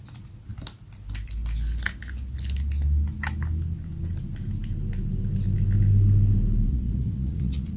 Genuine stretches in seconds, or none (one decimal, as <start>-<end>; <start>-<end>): 0.0-6.7